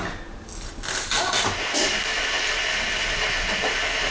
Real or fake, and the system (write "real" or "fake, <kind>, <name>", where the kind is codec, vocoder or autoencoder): real